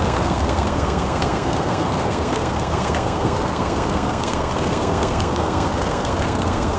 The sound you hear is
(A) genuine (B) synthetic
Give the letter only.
B